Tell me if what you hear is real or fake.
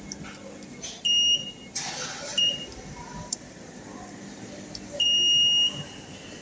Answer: real